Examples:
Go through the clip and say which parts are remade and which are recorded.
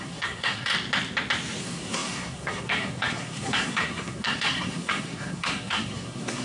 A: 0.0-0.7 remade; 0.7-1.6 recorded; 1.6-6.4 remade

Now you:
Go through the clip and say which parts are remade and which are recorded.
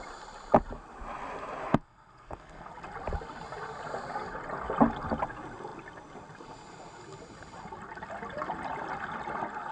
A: 0.0-1.6 recorded; 1.6-2.7 remade; 2.7-9.7 recorded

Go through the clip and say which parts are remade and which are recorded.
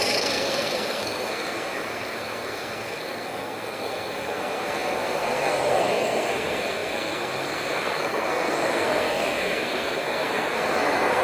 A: 0.0-11.2 remade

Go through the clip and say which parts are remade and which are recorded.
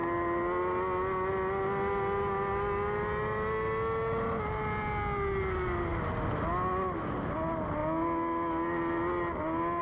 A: 0.0-9.8 recorded